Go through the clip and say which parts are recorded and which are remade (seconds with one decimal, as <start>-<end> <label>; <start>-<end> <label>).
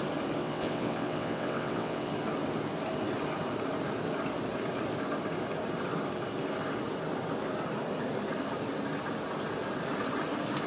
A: 0.0-0.4 recorded; 0.4-2.1 remade; 2.1-10.7 recorded